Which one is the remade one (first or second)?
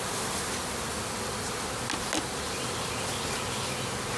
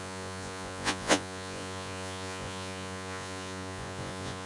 second